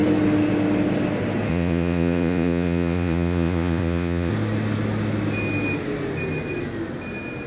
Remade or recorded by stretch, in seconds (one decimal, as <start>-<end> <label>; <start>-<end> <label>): 0.0-1.5 recorded; 1.5-4.3 remade; 4.3-7.5 recorded